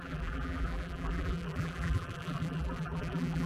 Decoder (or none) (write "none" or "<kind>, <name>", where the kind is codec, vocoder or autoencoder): vocoder, BigVGAN v2